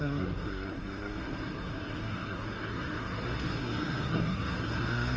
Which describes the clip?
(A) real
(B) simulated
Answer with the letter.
B